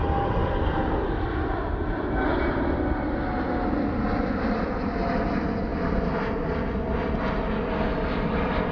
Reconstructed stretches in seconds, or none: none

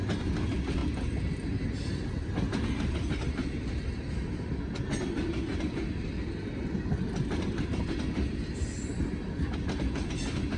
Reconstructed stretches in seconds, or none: none